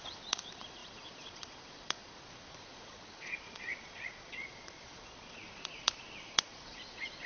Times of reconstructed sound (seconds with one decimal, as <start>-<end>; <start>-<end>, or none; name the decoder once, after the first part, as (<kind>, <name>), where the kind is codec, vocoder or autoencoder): 0.0-7.3 (vocoder, Vocos)